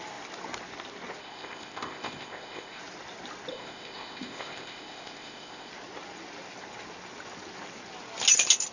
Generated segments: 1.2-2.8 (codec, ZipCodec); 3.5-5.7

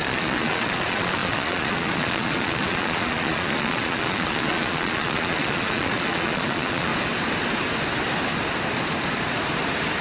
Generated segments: 0.0-6.9 (vocoder, Vocos)

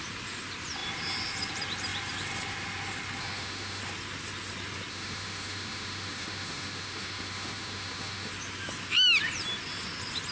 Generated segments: 3.2-3.8 (autoencoder, DAC-VAE); 4.9-8.3